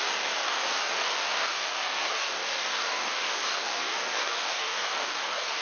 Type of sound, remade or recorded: remade